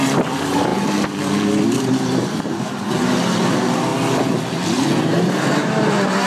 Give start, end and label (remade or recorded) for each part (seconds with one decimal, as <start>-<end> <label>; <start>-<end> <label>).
0.0-3.9 remade; 3.9-5.2 recorded; 5.2-6.3 remade